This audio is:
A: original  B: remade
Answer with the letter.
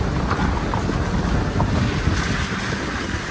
A